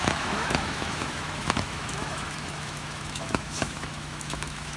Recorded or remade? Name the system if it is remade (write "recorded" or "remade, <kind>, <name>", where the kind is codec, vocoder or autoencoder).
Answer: remade, autoencoder, DAC-VAE